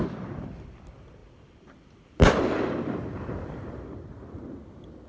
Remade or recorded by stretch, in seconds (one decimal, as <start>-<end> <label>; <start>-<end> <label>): 0.0-1.2 recorded; 1.2-4.3 remade; 4.3-5.1 recorded